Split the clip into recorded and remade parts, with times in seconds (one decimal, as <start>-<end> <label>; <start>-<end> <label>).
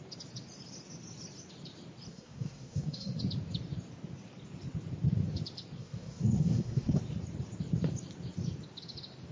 0.0-2.1 recorded; 2.1-3.2 remade; 3.2-5.8 recorded; 5.8-7.0 remade; 7.0-9.3 recorded